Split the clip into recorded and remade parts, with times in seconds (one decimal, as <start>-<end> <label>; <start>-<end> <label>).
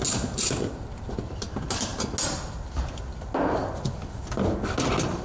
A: 0.0-5.2 recorded